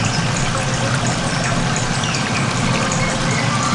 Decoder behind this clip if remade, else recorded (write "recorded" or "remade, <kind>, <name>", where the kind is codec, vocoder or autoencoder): recorded